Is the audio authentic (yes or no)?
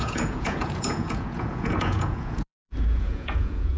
no